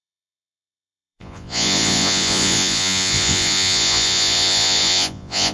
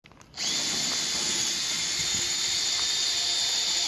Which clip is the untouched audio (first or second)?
second